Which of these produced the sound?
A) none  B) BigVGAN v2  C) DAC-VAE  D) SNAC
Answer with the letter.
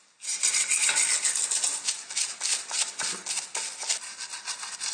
A